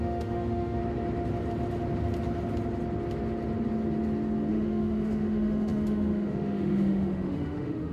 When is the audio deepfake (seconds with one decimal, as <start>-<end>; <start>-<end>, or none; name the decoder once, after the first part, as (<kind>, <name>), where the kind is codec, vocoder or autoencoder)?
0.0-0.8 (autoencoder, DAC-VAE); 4.5-7.9